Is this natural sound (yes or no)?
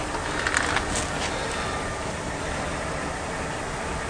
yes